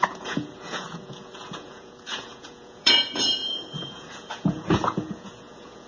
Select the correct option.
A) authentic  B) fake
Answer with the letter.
B